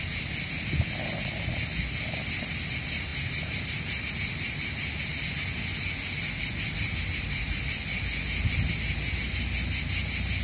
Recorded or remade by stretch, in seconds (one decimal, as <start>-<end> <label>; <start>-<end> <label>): 0.0-10.4 recorded